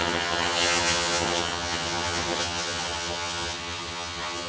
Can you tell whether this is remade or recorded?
remade